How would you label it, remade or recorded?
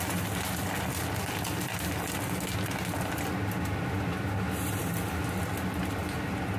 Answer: recorded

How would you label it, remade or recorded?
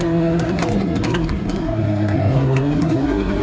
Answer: remade